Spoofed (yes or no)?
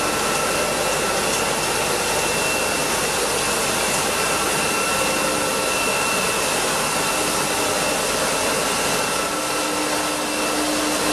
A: no